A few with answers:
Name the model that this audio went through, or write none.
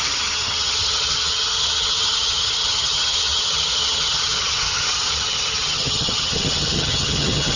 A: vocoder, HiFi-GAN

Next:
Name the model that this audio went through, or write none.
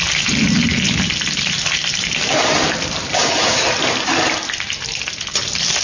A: none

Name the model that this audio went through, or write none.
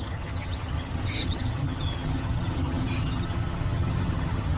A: vocoder, HiFi-GAN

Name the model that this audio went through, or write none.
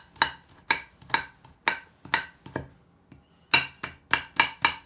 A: none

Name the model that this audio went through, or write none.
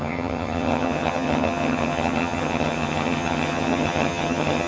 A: vocoder, HiFi-GAN